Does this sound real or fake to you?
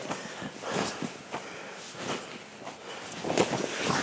real